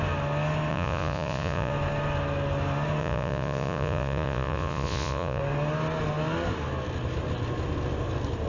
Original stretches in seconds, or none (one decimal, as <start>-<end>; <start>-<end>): 0.0-0.7; 1.7-3.0; 5.4-8.5